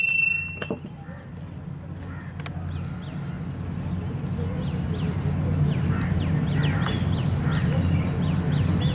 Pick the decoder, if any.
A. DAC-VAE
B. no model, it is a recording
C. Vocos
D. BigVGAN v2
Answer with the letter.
B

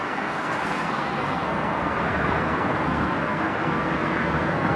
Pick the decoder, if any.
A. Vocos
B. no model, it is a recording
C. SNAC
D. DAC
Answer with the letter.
C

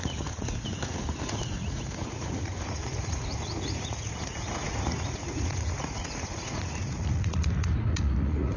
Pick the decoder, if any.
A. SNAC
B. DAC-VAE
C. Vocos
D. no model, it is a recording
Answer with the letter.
C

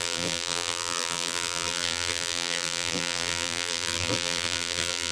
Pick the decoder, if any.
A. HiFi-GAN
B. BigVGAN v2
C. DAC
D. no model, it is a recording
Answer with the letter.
B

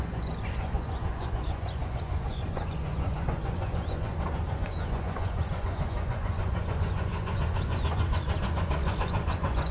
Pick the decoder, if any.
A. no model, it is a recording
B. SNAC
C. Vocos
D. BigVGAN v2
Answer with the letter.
C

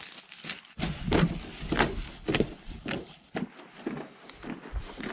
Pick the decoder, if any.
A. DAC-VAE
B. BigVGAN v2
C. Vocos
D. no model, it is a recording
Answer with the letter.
D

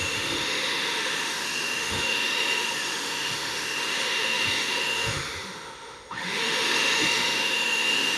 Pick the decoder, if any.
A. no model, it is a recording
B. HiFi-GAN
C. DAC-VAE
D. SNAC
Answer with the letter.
C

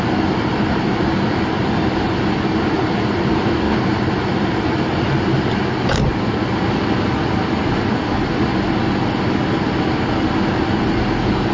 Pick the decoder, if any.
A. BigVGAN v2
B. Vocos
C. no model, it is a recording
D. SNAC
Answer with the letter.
C